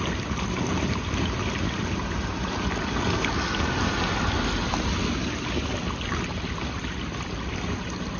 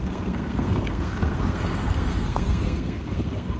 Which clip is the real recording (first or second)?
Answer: first